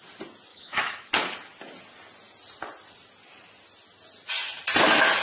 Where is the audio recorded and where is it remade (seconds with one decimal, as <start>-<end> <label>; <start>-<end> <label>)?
0.0-0.5 recorded; 0.5-1.1 remade; 1.1-5.2 recorded